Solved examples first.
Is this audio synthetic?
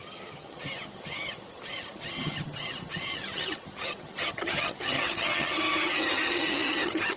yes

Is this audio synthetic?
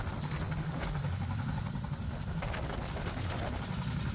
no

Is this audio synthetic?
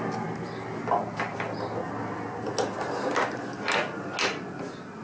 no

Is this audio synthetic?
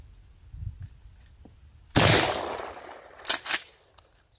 no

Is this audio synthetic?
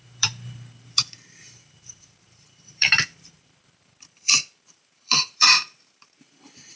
yes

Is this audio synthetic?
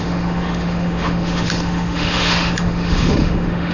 yes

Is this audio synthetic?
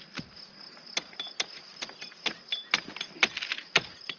no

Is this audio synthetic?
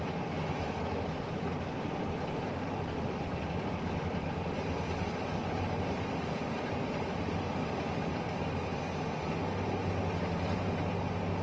no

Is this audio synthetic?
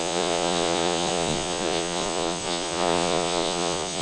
yes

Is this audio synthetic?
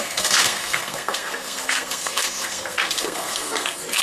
yes